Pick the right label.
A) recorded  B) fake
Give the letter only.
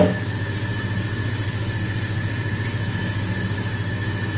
A